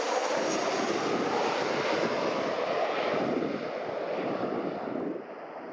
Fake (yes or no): yes